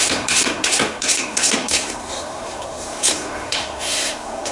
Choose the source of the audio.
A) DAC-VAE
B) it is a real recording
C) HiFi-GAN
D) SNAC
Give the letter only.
D